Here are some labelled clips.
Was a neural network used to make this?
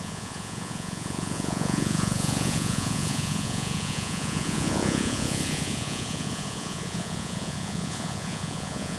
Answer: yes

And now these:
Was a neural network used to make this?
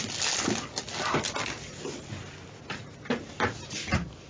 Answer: no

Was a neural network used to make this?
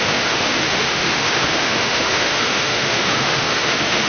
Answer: yes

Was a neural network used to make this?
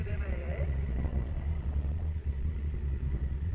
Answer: yes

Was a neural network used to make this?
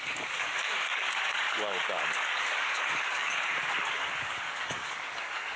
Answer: yes